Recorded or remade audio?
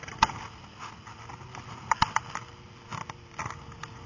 recorded